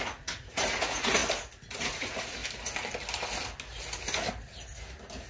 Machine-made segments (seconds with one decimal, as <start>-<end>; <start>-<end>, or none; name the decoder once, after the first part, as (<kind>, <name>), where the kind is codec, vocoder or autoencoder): 0.0-1.2 (vocoder, Vocos); 1.8-2.4